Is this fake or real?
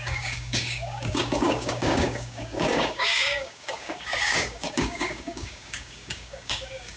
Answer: fake